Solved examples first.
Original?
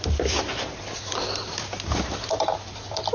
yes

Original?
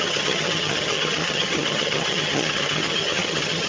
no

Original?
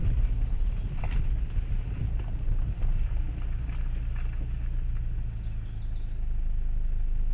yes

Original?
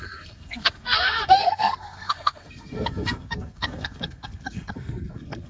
no